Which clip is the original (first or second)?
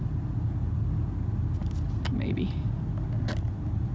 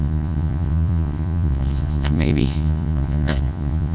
first